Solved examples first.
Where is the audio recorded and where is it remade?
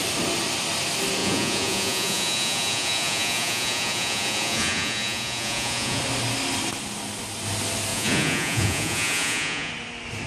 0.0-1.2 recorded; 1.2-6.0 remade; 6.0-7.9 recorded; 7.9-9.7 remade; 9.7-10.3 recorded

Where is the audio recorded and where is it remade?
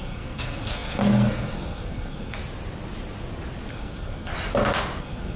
0.0-2.4 remade; 2.4-3.7 recorded; 3.7-4.3 remade; 4.3-5.0 recorded; 5.0-5.4 remade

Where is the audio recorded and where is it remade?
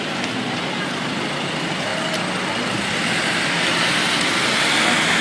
0.0-5.2 recorded